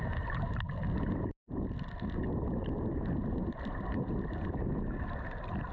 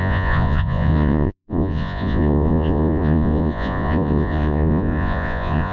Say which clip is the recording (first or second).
first